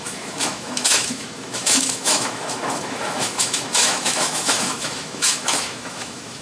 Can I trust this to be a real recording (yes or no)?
no